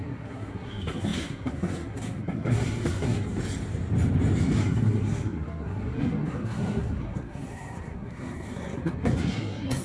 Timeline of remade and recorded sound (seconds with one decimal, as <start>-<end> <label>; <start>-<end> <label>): 0.0-3.4 remade; 3.4-4.6 recorded; 4.6-9.8 remade